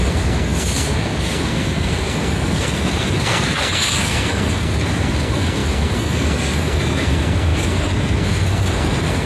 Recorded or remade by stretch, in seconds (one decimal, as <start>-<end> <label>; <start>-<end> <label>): 0.0-9.3 remade